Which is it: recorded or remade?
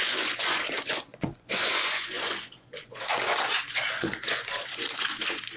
remade